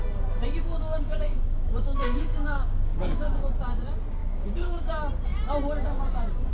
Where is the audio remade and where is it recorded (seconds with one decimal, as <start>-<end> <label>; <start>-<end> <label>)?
0.0-0.6 recorded; 0.6-3.3 remade; 3.3-4.2 recorded; 4.2-4.8 remade; 4.8-6.5 recorded